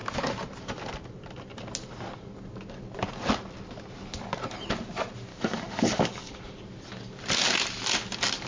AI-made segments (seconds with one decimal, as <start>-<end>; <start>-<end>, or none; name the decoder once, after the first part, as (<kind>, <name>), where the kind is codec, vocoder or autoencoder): 5.3-6.4 (codec, DAC)